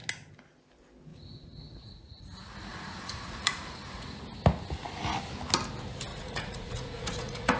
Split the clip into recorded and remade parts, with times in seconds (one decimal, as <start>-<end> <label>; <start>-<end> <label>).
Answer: 0.0-1.1 recorded; 1.1-2.2 remade; 2.2-2.7 recorded; 2.7-4.2 remade; 4.2-6.1 recorded; 6.1-7.6 remade